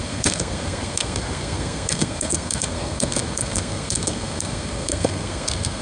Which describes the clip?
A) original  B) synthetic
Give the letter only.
B